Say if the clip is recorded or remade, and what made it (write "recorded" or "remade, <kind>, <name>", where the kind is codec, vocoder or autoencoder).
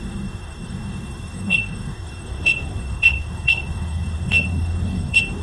remade, codec, SNAC